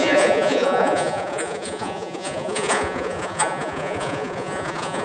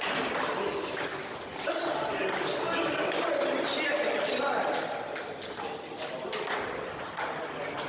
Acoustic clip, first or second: second